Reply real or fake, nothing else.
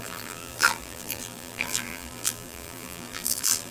fake